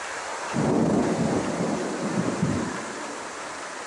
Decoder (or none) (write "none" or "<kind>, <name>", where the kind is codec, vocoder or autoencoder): none